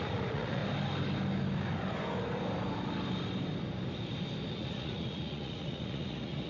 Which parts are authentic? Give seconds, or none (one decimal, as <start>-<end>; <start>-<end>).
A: 0.6-4.5